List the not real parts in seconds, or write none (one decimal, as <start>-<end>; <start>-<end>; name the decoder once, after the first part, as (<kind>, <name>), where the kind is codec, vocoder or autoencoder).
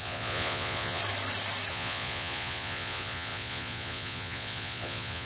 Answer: 0.0-1.0 (vocoder, Vocos); 1.7-5.3